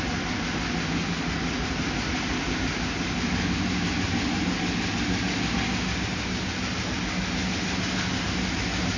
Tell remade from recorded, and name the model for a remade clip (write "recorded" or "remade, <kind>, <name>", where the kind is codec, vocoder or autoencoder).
recorded